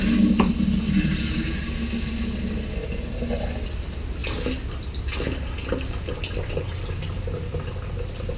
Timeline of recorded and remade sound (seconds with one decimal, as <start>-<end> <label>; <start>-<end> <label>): 0.0-8.4 recorded